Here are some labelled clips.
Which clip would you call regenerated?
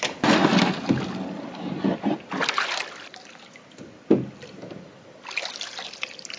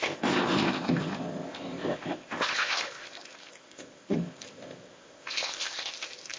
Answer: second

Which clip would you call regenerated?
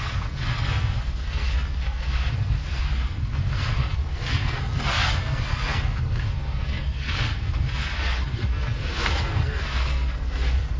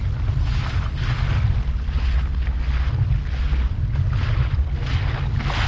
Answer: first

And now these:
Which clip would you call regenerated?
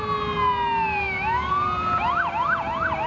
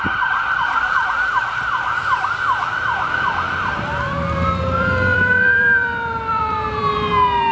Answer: second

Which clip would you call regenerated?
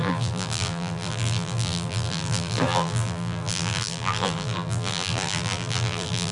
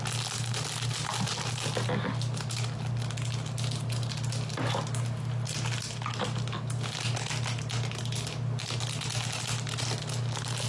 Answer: first